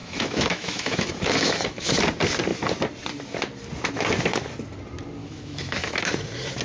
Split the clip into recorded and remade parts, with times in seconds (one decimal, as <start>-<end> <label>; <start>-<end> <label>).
0.0-1.9 remade; 1.9-5.2 recorded; 5.2-6.0 remade; 6.0-6.6 recorded